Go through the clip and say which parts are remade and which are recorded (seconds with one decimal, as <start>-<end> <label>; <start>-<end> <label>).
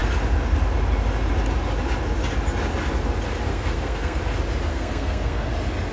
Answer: 0.0-3.5 recorded; 3.5-4.2 remade; 4.2-4.7 recorded; 4.7-5.5 remade; 5.5-5.9 recorded